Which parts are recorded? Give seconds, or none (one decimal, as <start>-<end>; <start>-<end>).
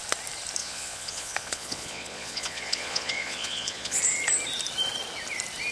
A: 0.0-0.6; 4.0-5.7